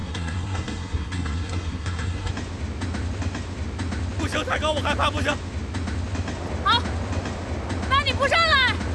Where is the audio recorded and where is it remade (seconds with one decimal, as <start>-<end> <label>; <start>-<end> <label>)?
0.0-2.3 remade; 2.3-8.9 recorded